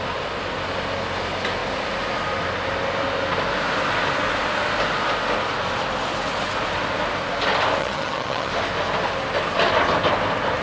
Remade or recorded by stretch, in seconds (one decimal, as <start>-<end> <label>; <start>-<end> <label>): 0.0-7.8 recorded; 7.8-8.5 remade; 8.5-10.6 recorded